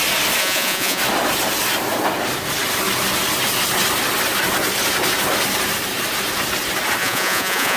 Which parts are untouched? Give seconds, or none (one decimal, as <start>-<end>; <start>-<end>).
0.0-0.4; 1.0-7.0